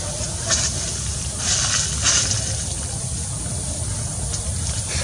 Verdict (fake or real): real